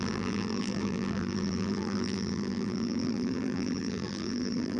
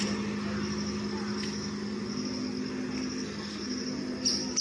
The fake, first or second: first